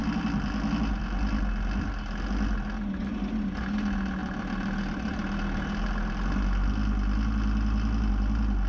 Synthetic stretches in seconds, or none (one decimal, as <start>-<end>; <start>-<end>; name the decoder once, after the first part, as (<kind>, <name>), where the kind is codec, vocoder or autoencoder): none

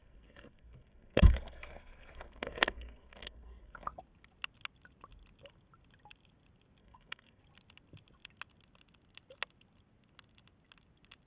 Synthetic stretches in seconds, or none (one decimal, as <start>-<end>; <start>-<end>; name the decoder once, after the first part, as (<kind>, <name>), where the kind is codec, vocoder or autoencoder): 0.0-4.0 (codec, SNAC); 6.8-7.4

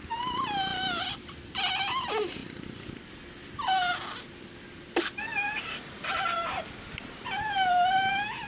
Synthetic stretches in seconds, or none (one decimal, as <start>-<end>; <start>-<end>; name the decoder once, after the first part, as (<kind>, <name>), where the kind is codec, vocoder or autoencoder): 0.7-1.6 (vocoder, BigVGAN v2); 2.4-3.1; 5.3-5.9

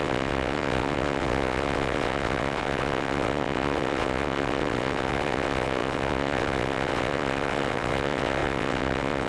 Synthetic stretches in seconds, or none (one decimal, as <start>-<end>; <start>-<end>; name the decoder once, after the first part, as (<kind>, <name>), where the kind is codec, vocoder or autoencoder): 0.0-9.3 (vocoder, WaveNeXt)

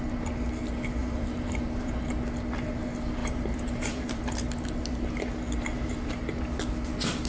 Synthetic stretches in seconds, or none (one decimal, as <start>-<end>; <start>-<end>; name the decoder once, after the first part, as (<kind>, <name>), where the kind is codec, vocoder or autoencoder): 1.0-2.0 (vocoder, BigVGAN v2); 3.2-4.2